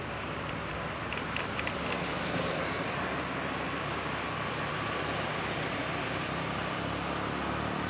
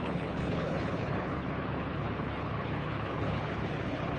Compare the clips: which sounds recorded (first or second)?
first